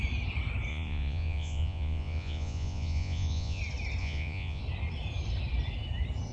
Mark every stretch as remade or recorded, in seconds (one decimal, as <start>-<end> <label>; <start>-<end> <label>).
0.0-0.7 recorded; 0.7-3.6 remade; 3.6-4.0 recorded; 4.0-4.6 remade; 4.6-6.3 recorded